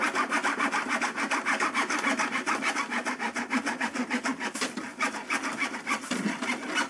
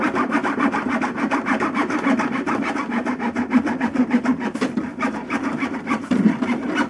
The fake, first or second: second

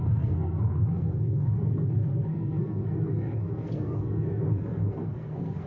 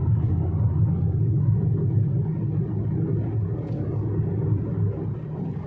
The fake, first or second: first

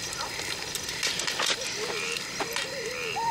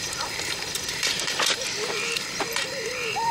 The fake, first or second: second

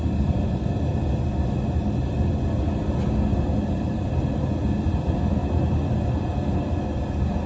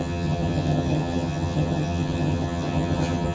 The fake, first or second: second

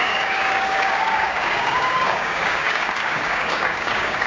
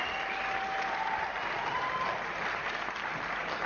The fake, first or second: first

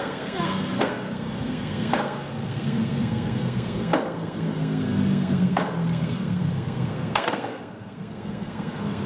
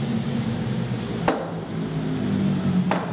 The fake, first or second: first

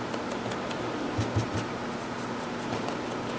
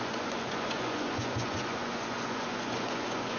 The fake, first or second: second